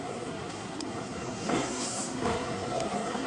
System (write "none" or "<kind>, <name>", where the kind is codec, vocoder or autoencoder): codec, SNAC